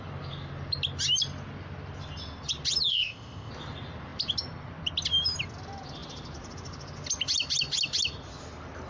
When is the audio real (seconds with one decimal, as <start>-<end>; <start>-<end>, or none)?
0.0-2.9; 3.5-8.9